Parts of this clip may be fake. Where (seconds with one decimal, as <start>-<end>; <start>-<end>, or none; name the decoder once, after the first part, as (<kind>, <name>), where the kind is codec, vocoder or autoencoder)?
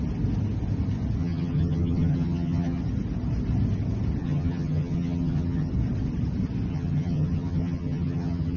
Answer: 1.2-2.8 (vocoder, HiFi-GAN); 4.2-5.7; 6.7-8.6